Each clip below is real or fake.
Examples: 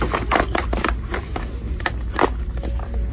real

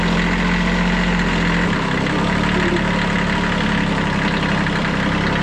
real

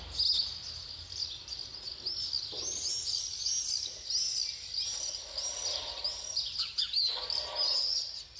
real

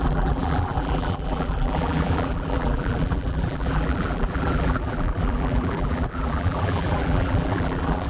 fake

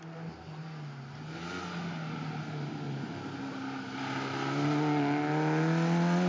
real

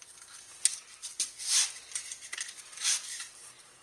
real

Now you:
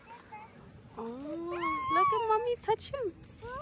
real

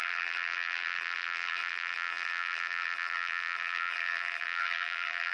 fake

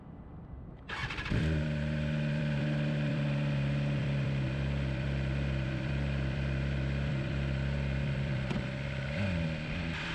fake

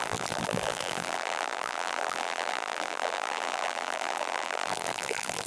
fake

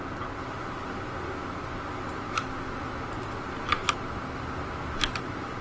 real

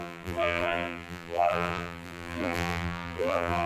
fake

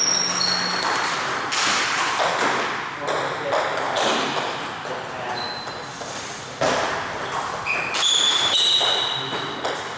real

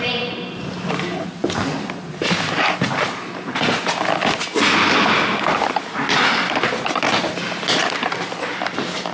real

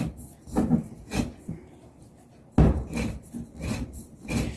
real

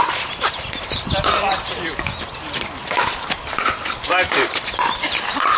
fake